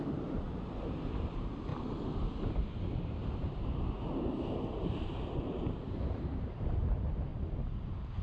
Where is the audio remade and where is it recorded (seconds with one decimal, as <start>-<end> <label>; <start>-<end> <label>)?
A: 0.0-1.7 remade; 1.7-2.4 recorded; 2.4-7.3 remade; 7.3-8.2 recorded